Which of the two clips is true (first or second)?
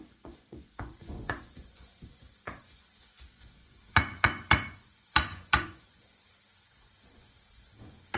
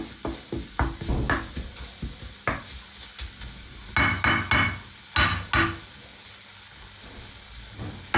second